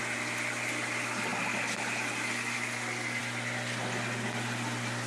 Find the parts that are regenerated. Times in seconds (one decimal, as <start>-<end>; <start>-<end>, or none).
none